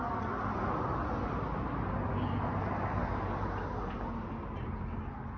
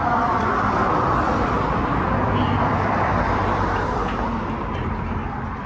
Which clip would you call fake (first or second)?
second